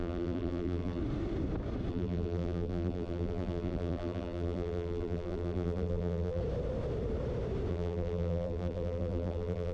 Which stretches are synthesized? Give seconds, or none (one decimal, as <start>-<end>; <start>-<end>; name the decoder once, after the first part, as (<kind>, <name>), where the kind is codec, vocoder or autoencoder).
0.0-1.0 (vocoder, BigVGAN v2); 1.9-6.4; 7.7-9.7